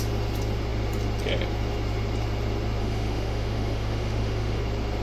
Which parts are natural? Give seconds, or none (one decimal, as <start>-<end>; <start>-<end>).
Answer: 0.0-2.8; 4.6-5.0